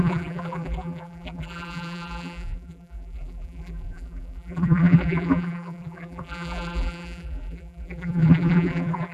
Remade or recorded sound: remade